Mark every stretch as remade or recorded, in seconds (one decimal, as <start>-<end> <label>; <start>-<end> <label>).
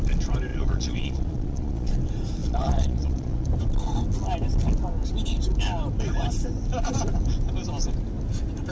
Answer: 0.0-0.5 recorded; 0.5-1.9 remade; 1.9-2.4 recorded; 2.4-3.5 remade; 3.5-8.7 recorded